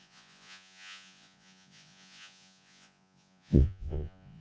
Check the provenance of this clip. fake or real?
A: fake